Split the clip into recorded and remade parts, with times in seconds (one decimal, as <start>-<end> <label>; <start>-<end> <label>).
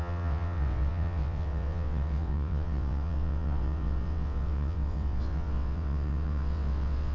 0.0-7.1 remade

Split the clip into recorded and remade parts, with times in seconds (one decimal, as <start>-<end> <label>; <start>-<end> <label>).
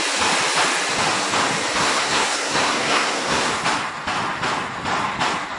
0.0-1.8 recorded; 1.8-3.5 remade; 3.5-5.6 recorded